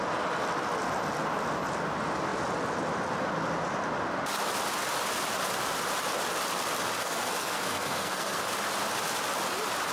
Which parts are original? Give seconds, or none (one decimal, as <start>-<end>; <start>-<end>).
0.0-7.0; 8.4-9.9